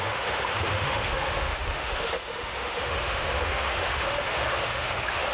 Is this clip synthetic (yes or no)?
yes